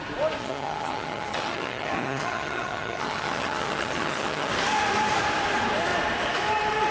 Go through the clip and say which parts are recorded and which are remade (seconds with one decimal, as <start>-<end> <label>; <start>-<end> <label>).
0.0-0.4 recorded; 0.4-4.5 remade; 4.5-6.9 recorded